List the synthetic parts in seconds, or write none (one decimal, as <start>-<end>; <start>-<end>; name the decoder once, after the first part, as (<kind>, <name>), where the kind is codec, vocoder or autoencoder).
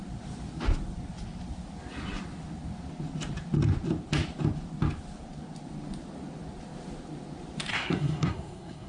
7.7-8.9 (codec, SNAC)